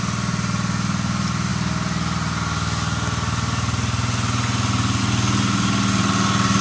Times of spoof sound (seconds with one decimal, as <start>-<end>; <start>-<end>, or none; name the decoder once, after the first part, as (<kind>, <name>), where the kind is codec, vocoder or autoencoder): none